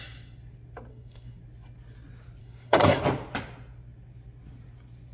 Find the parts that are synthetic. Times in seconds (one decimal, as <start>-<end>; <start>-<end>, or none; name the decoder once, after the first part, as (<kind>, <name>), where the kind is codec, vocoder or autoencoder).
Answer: 0.9-1.4 (codec, SNAC); 2.4-3.0